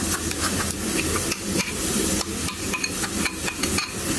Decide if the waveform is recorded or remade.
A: recorded